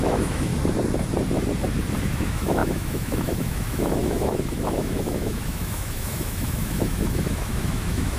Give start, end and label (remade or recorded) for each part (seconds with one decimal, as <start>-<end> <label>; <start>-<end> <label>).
0.0-0.5 remade; 0.5-2.0 recorded; 2.0-8.2 remade